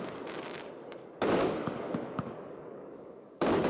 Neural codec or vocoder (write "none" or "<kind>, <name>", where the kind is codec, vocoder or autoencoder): codec, DAC